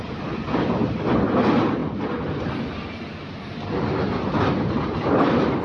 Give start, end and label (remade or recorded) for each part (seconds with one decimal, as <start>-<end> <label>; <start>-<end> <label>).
0.0-5.6 recorded